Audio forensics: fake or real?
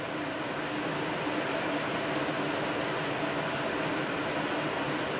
real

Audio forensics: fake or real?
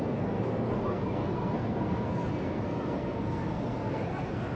fake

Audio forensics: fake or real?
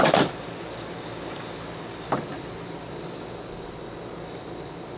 real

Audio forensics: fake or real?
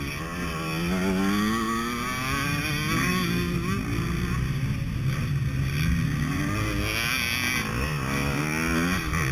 real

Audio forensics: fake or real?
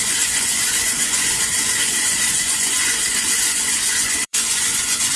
fake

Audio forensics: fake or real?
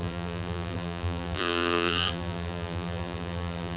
fake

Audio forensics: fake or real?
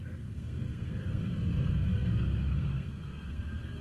fake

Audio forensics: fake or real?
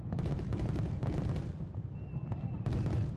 real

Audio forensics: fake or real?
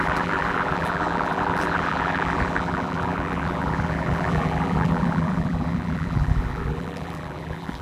fake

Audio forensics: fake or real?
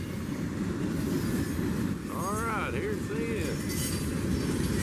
real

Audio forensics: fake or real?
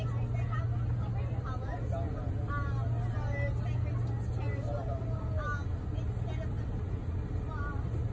real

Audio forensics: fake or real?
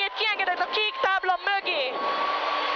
real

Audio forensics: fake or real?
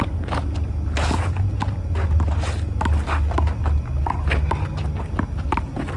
real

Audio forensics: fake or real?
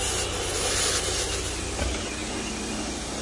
real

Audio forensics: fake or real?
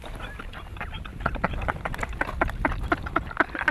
real